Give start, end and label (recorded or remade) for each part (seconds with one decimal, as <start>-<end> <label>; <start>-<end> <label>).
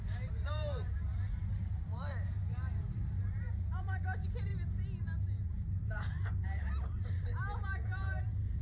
0.0-1.1 remade; 1.1-1.6 recorded; 1.6-4.5 remade; 4.5-5.5 recorded; 5.5-8.6 remade